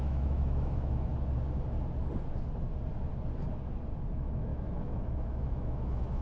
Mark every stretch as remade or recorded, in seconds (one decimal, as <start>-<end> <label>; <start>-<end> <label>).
0.0-1.1 remade; 1.1-4.1 recorded; 4.1-6.2 remade